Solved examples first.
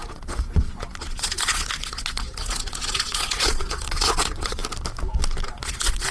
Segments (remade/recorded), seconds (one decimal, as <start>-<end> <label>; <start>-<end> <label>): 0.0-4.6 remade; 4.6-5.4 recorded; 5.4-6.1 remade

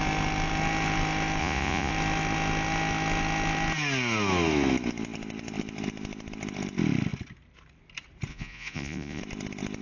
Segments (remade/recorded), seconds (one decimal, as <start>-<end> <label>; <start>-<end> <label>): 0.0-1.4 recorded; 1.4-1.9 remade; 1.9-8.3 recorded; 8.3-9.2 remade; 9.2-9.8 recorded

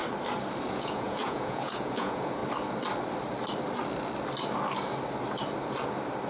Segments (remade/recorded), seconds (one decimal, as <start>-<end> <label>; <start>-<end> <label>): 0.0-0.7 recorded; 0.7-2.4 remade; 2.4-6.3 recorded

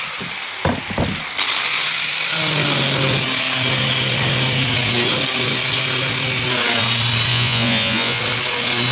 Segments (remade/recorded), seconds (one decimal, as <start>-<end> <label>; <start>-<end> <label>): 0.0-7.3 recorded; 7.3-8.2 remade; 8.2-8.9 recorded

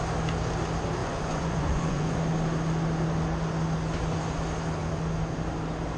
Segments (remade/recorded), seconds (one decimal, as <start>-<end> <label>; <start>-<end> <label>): 0.0-1.0 recorded; 1.0-2.2 remade; 2.2-6.0 recorded

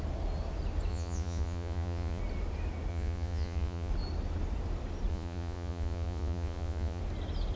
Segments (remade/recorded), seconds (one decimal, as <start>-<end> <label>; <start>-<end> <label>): 0.0-0.9 recorded; 0.9-2.2 remade; 2.2-2.9 recorded; 2.9-3.9 remade; 3.9-5.1 recorded; 5.1-7.0 remade; 7.0-7.6 recorded

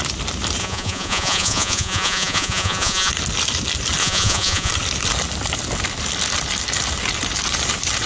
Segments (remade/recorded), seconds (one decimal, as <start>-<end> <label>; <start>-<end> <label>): 0.0-0.6 recorded; 0.6-3.1 remade; 3.1-4.0 recorded; 4.0-4.7 remade; 4.7-8.1 recorded

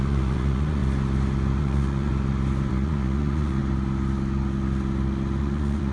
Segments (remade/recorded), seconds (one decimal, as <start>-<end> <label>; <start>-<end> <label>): 0.0-0.8 remade; 0.8-1.6 recorded; 1.6-2.1 remade; 2.1-2.7 recorded; 2.7-3.6 remade; 3.6-5.4 recorded; 5.4-5.9 remade